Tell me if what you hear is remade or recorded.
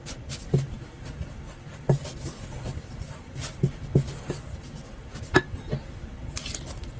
recorded